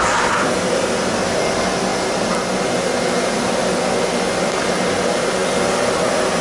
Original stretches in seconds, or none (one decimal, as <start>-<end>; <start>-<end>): 0.0-6.4